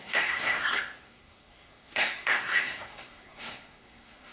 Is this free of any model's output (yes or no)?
no